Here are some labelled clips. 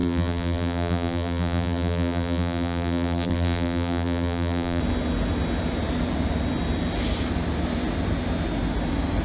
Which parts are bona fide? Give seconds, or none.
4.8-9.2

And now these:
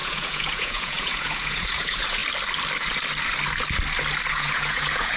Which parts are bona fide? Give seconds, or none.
2.2-4.3

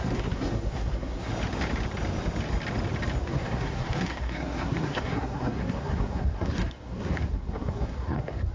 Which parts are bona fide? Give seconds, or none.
1.3-3.2